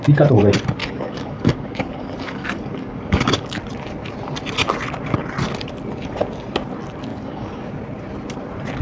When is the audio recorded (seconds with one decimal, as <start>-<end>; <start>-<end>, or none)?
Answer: 0.0-0.8; 3.6-7.1; 7.7-8.8